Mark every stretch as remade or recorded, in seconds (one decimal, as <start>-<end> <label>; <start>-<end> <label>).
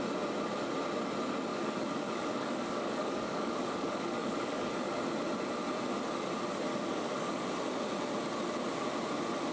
0.0-1.5 recorded; 1.5-4.7 remade; 4.7-6.7 recorded; 6.7-7.4 remade; 7.4-9.5 recorded